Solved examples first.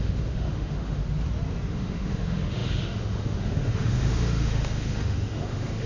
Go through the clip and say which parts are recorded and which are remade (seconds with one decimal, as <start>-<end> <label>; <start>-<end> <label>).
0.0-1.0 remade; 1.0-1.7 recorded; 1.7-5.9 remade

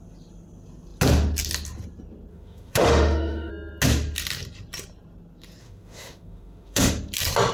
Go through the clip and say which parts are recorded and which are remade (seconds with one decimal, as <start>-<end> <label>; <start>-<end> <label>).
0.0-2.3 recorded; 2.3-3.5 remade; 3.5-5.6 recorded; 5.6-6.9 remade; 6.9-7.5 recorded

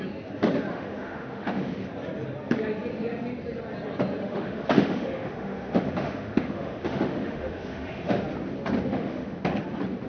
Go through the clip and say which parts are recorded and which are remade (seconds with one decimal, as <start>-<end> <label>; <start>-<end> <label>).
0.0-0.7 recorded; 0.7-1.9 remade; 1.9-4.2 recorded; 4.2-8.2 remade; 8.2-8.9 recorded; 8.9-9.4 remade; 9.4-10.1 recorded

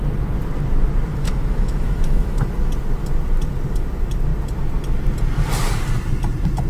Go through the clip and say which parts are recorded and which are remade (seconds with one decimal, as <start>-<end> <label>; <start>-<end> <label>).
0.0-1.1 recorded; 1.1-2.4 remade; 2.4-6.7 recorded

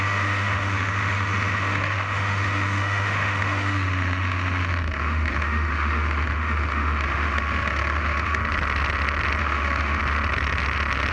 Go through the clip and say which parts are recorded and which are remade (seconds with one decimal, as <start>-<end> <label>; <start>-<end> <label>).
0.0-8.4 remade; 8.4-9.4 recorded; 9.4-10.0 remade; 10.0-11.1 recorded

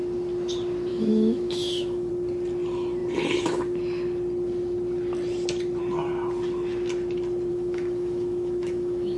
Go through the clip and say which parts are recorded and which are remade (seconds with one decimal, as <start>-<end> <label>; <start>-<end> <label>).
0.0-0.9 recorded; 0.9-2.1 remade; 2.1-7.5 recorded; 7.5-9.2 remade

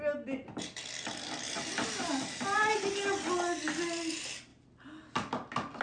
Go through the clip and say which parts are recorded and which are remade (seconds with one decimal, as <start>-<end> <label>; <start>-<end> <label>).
0.0-5.8 recorded